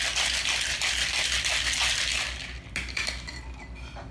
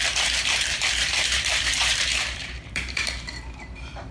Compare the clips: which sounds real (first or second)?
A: first